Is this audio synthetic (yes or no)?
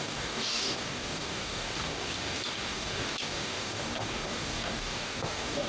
yes